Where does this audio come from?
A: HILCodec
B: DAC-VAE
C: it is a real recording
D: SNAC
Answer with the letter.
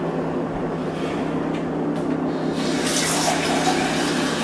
C